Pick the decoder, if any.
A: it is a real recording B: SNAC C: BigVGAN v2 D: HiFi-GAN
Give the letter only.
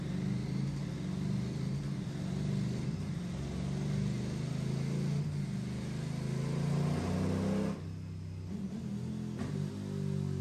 A